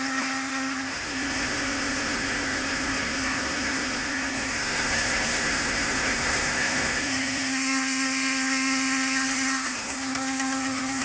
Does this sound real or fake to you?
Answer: fake